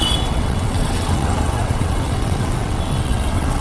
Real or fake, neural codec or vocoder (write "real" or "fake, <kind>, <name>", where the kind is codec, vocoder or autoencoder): fake, vocoder, WaveNeXt